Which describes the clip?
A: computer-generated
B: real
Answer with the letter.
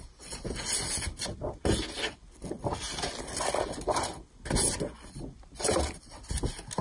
B